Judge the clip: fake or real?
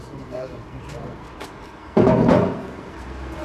fake